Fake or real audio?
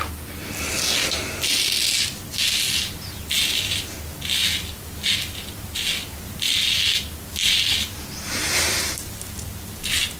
real